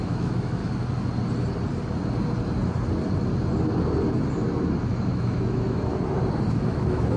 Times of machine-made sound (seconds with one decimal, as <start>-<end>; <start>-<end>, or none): 0.0-0.6; 4.8-5.9; 6.5-7.2